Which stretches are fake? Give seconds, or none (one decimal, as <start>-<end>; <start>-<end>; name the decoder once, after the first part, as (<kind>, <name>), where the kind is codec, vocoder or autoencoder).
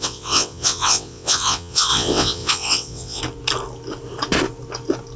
0.0-3.2 (vocoder, WaveNeXt)